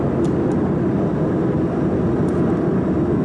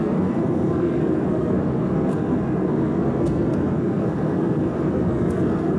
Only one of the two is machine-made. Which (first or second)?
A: second